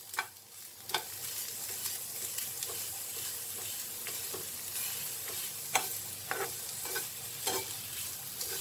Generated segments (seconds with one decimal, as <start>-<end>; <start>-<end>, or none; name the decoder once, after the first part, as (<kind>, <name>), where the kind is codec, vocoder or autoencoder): none

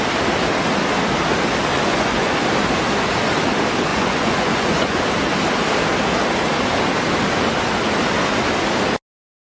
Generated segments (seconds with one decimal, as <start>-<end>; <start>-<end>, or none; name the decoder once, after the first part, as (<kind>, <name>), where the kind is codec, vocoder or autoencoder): 1.7-2.3 (vocoder, Vocos); 3.9-5.0

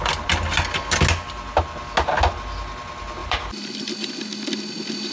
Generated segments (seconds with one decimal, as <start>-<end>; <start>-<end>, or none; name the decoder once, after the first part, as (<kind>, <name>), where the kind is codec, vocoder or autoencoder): 3.2-3.9 (vocoder, BigVGAN v2)

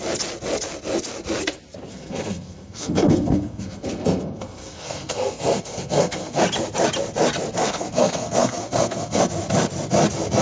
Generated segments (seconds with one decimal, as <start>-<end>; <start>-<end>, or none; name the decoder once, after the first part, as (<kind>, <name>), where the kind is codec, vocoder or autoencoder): 1.9-6.4 (codec, SNAC); 7.6-9.2